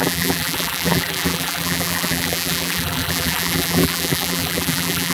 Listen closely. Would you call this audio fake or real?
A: fake